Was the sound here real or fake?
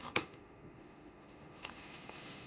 fake